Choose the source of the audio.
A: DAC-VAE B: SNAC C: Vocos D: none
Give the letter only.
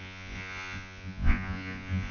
C